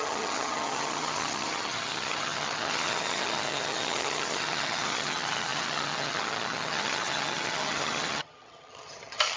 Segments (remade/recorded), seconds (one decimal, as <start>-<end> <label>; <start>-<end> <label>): 0.0-9.4 remade

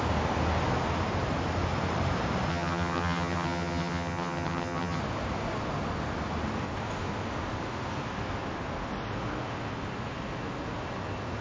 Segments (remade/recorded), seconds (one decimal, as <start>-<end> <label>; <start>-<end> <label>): 0.0-2.5 recorded; 2.5-5.0 remade; 5.0-11.4 recorded